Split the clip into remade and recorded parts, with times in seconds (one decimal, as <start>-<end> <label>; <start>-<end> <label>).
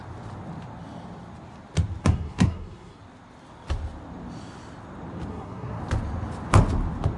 0.0-2.0 recorded; 2.0-3.0 remade; 3.0-5.3 recorded; 5.3-5.8 remade; 5.8-7.2 recorded